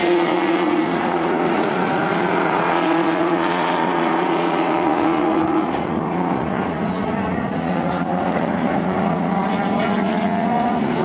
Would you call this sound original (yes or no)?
no